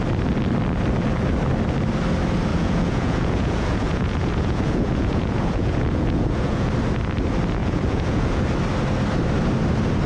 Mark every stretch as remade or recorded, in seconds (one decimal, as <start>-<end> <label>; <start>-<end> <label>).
0.0-2.5 recorded; 2.5-6.7 remade; 6.7-7.6 recorded; 7.6-8.4 remade; 8.4-10.1 recorded